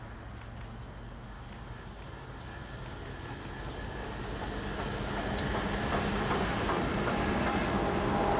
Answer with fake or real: real